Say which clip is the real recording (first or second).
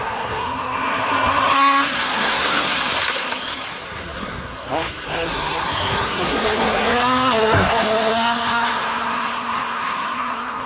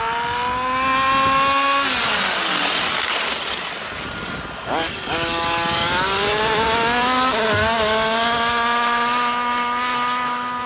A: second